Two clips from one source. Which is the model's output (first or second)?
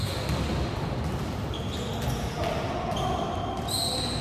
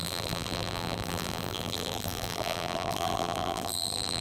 second